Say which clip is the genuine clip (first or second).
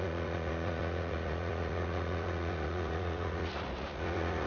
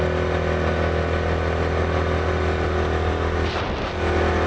second